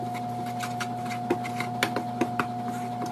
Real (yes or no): yes